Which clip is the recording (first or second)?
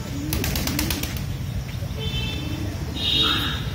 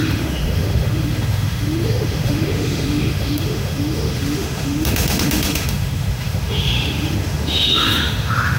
first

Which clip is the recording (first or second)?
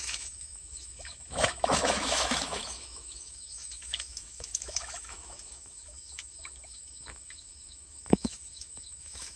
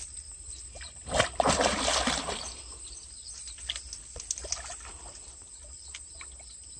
second